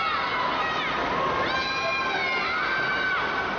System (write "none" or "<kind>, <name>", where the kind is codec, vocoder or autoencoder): none